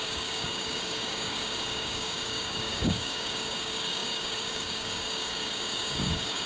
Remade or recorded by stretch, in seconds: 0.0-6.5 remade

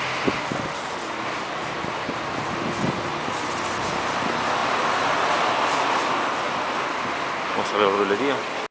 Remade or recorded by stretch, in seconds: 0.0-8.7 recorded

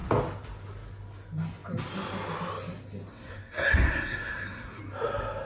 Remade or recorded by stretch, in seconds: 0.0-3.1 recorded; 3.1-4.8 remade; 4.8-5.5 recorded

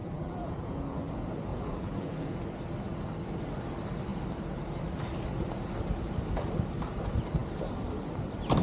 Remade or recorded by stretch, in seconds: 0.0-1.1 remade; 1.1-1.5 recorded; 1.5-2.4 remade; 2.4-8.6 recorded